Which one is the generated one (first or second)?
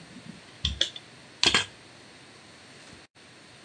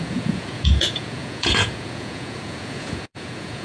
second